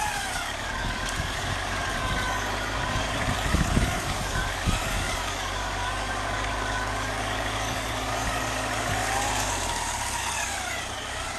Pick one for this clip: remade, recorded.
remade